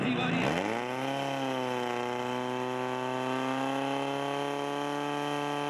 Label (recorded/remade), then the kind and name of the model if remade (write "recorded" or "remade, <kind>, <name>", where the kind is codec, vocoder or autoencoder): recorded